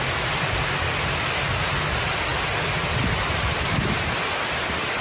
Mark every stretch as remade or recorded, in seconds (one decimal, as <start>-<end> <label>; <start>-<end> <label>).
0.0-5.0 recorded